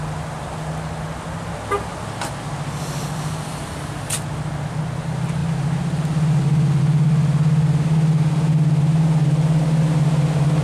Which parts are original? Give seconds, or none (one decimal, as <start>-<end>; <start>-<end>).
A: 0.0-10.6